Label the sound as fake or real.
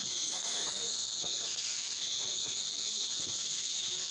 fake